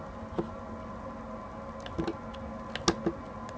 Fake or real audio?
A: real